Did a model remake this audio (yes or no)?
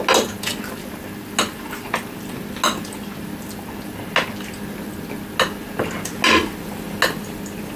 no